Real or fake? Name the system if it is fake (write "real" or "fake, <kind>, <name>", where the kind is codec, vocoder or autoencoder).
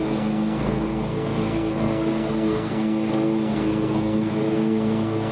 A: fake, codec, SNAC